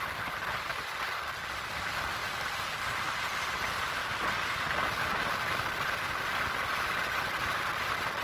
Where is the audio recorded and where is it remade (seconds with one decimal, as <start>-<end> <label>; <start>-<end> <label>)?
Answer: 0.0-8.2 recorded